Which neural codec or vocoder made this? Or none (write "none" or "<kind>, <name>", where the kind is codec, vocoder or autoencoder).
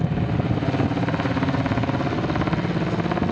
none